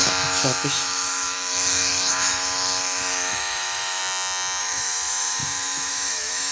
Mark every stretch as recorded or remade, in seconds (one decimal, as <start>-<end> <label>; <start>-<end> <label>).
0.0-4.0 remade; 4.0-4.6 recorded; 4.6-6.5 remade